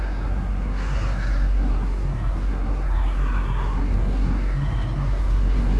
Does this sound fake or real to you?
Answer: fake